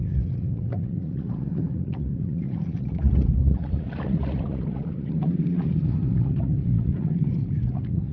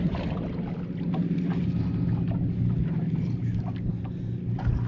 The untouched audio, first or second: second